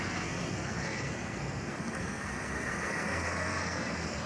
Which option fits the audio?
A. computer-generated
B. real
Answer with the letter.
A